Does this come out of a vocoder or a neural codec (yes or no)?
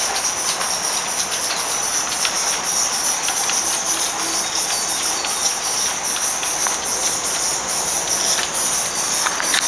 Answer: no